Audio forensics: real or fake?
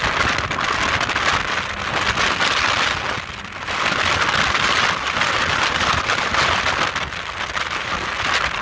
real